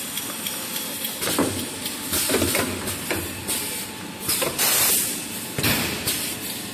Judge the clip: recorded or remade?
recorded